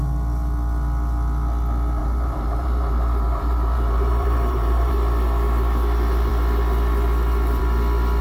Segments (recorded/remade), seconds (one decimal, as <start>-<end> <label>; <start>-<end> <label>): 0.0-2.0 recorded; 2.0-4.9 remade; 4.9-8.2 recorded